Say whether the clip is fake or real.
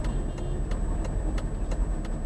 real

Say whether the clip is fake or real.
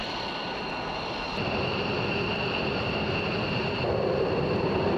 real